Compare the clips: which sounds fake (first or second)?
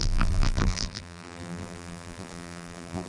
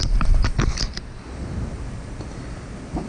first